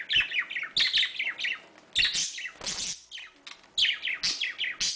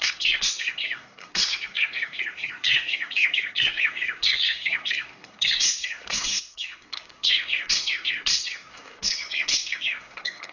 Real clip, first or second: first